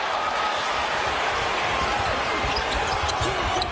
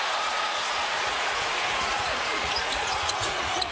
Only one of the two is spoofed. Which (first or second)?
second